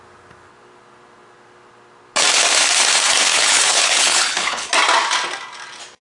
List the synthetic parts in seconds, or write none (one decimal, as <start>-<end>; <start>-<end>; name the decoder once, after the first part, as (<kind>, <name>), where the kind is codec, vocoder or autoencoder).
3.3-4.7 (codec, HILCodec)